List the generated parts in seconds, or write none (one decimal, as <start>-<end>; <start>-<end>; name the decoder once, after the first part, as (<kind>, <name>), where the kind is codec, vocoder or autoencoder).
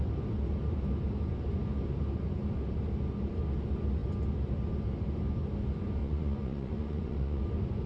6.0-7.4 (vocoder, Vocos)